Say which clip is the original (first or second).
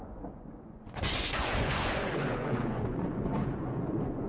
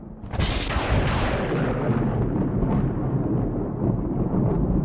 second